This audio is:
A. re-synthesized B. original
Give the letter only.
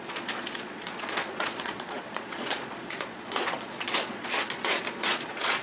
A